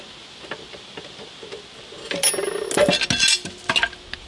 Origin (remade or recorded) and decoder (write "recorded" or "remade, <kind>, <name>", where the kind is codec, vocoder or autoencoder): recorded